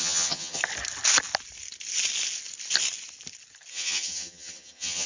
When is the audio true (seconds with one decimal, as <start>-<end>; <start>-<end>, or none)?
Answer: 0.6-3.7